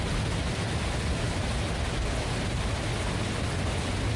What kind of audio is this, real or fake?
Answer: real